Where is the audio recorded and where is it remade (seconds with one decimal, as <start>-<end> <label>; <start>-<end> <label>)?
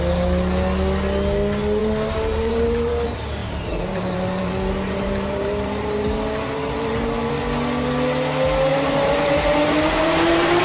0.0-1.8 recorded; 1.8-2.9 remade; 2.9-3.4 recorded; 3.4-7.3 remade; 7.3-8.7 recorded; 8.7-10.6 remade